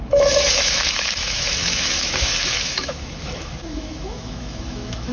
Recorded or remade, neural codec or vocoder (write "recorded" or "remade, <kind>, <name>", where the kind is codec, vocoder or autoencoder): remade, autoencoder, DAC-VAE